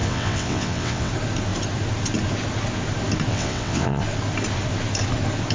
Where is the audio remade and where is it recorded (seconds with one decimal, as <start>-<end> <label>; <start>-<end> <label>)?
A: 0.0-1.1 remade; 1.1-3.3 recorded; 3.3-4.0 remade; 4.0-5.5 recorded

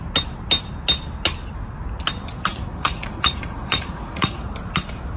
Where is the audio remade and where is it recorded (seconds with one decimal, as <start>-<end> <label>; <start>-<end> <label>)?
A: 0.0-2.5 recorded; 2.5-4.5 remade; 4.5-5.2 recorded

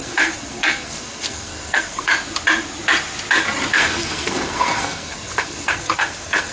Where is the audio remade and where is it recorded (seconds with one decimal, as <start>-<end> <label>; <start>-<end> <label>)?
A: 0.0-2.1 remade; 2.1-3.7 recorded; 3.7-6.5 remade